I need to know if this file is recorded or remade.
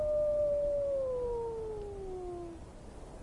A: recorded